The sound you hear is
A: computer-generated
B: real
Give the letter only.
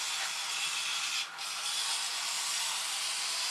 B